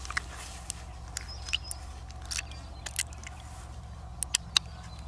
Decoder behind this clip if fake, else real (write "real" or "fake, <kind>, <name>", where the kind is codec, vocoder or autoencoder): real